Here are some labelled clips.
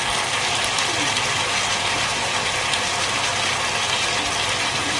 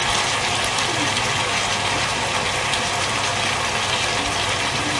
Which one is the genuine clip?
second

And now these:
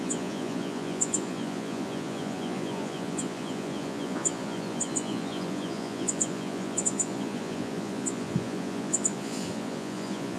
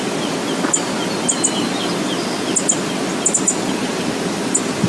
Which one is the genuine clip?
second